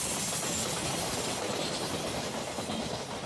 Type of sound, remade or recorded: recorded